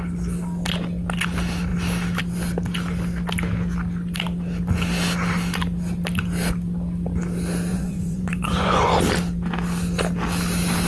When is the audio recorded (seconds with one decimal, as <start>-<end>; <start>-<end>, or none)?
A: 0.0-7.7; 8.9-10.9

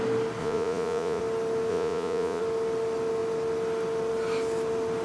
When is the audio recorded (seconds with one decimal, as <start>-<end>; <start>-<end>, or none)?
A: 0.0-0.4; 1.2-1.7; 2.4-5.0